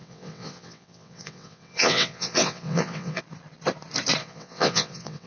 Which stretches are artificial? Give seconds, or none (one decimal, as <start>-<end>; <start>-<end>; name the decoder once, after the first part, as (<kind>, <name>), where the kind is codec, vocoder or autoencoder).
0.0-3.2 (vocoder, WaveNeXt); 4.2-5.3

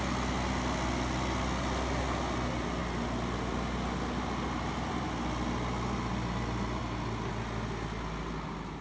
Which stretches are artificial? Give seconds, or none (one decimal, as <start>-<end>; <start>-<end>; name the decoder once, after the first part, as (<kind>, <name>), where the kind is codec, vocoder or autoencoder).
none

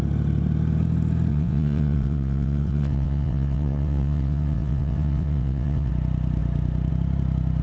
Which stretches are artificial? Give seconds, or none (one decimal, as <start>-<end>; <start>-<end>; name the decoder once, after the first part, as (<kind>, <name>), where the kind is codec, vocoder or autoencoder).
1.3-5.9 (vocoder, WaveNeXt)

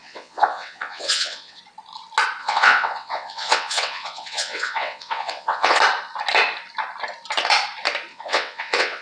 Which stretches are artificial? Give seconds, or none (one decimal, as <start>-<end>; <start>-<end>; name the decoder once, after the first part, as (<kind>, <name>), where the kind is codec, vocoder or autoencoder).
0.0-1.6 (vocoder, WaveNeXt); 2.4-5.8; 8.1-9.0

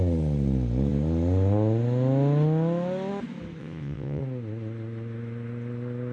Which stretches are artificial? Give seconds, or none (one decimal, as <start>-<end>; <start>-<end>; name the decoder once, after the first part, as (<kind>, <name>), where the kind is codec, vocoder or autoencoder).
3.6-4.2 (vocoder, WaveNeXt)

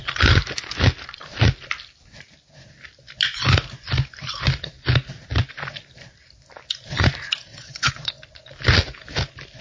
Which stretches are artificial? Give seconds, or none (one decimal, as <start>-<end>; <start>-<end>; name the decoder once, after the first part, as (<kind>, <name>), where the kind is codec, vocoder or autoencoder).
7.5-8.1 (vocoder, WaveNeXt)

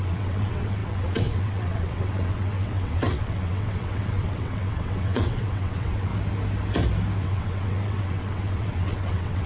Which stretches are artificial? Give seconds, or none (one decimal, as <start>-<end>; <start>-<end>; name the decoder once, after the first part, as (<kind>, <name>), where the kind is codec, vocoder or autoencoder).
0.0-6.1 (vocoder, WaveNeXt); 7.2-9.5